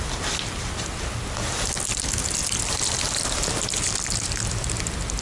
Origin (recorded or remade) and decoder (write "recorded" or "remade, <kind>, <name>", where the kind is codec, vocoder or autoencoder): recorded